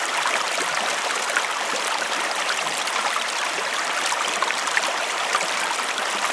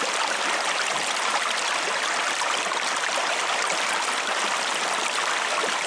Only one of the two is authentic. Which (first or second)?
second